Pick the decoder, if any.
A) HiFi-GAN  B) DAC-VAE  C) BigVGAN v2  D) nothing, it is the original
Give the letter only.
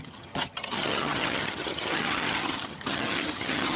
A